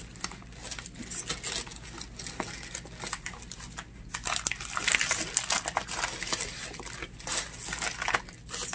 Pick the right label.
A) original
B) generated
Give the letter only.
A